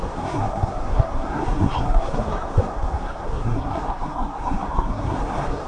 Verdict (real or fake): fake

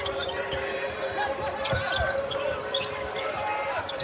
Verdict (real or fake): fake